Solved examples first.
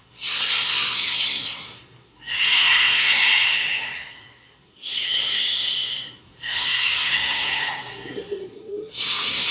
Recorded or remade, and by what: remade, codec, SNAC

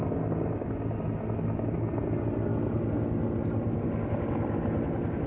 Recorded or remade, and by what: recorded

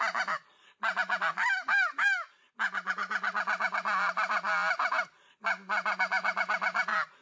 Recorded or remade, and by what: recorded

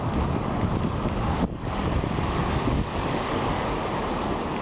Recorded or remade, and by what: remade, codec, DAC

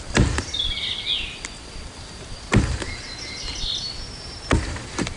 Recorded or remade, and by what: recorded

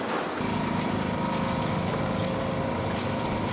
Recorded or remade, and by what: recorded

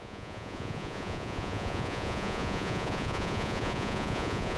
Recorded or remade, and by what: remade, vocoder, Vocos